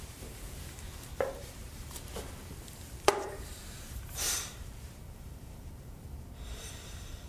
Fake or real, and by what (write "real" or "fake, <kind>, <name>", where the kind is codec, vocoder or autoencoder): fake, vocoder, BigVGAN v2